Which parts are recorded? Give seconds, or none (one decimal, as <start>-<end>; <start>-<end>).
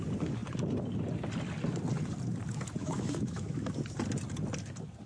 0.0-2.8; 3.6-5.1